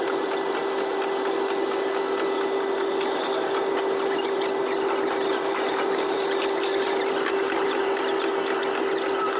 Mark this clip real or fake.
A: real